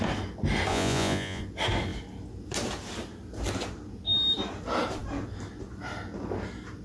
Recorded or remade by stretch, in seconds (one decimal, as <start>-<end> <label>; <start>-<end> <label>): 0.0-0.7 recorded; 0.7-1.4 remade; 1.4-6.8 recorded